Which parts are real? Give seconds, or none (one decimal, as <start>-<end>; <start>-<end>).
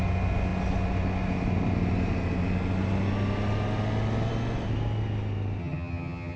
0.0-5.6